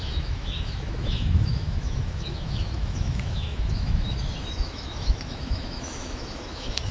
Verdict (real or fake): fake